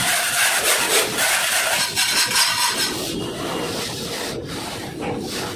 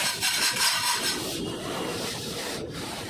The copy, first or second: second